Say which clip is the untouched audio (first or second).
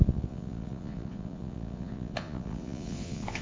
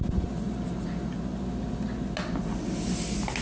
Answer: second